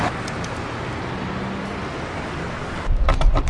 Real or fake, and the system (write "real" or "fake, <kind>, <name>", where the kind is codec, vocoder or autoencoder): real